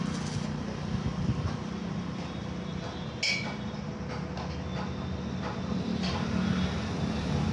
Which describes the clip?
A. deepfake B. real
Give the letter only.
B